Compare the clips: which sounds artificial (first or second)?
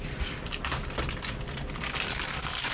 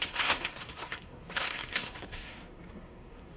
second